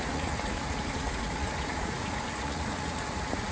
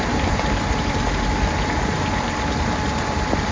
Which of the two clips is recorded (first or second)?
second